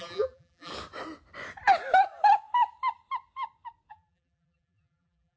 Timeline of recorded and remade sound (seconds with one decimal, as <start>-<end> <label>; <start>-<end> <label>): 0.0-0.7 remade; 0.7-3.9 recorded; 3.9-5.4 remade